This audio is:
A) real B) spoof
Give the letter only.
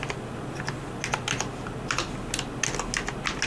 A